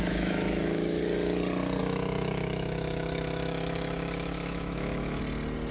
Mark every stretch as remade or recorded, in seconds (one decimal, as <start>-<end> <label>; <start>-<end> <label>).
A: 0.0-1.0 remade; 1.0-1.8 recorded; 1.8-5.2 remade; 5.2-5.7 recorded